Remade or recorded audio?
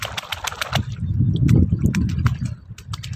recorded